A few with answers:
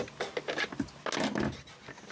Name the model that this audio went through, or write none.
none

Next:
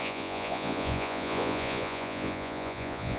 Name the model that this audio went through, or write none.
vocoder, Vocos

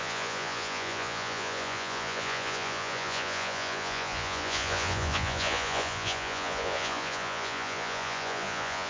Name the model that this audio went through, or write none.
vocoder, Vocos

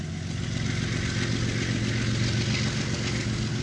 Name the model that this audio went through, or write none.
none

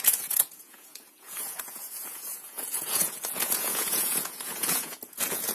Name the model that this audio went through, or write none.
vocoder, Vocos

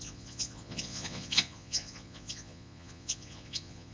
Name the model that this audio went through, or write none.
vocoder, Vocos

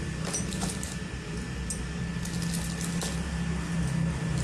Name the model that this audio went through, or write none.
none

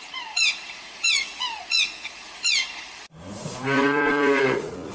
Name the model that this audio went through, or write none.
vocoder, Vocos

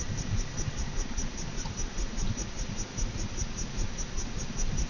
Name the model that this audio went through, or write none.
none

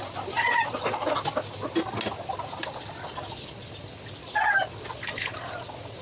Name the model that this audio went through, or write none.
none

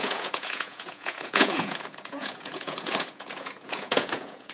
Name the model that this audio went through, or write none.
vocoder, Vocos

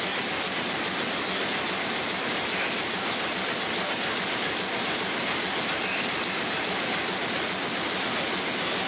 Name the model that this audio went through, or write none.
none